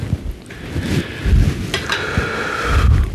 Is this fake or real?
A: real